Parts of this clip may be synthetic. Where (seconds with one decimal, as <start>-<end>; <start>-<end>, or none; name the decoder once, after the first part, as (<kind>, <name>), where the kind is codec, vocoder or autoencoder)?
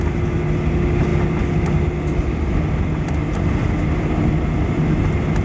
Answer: none